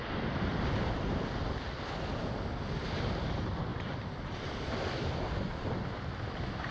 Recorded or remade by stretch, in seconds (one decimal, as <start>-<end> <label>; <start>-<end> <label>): 0.0-6.7 recorded